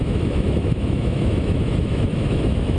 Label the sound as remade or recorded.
remade